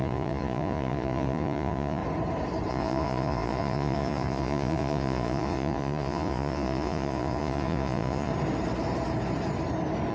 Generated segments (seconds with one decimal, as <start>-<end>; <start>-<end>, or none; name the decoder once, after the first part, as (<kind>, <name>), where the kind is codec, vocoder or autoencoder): 0.0-2.0 (vocoder, Vocos); 2.7-8.3